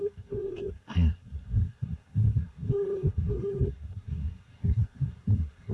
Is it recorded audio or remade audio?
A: remade